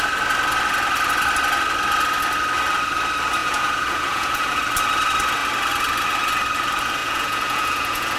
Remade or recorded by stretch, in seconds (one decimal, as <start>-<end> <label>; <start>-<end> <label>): 0.0-3.4 recorded; 3.4-4.6 remade; 4.6-7.0 recorded; 7.0-8.2 remade